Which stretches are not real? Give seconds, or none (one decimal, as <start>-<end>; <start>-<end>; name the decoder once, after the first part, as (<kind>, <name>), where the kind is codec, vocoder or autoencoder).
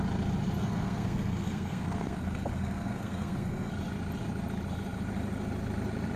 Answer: 0.6-3.7 (codec, SNAC)